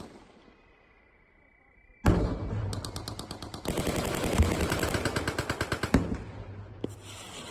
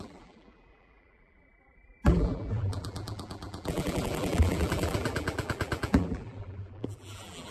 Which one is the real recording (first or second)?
first